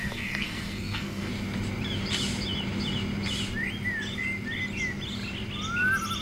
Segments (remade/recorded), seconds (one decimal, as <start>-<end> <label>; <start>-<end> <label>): 0.0-1.3 remade; 1.3-6.2 recorded